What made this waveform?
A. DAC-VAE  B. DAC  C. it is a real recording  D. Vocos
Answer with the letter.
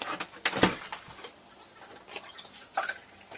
C